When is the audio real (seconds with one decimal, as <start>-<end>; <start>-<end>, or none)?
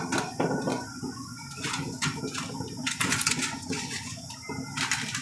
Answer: 0.0-0.7; 2.2-2.8; 4.3-5.2